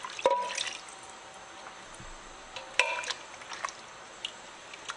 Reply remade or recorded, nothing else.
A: recorded